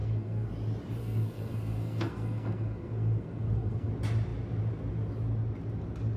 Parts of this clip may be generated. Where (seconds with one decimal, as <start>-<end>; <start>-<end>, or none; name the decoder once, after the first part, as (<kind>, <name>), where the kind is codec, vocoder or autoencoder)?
0.0-0.5 (codec, SNAC); 1.0-3.9